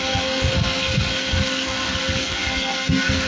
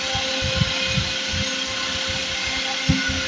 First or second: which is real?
second